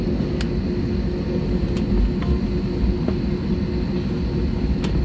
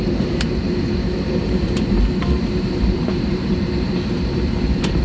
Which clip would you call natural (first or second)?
first